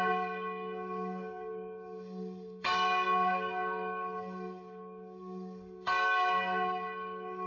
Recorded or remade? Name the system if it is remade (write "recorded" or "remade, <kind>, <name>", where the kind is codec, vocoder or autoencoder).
remade, codec, DAC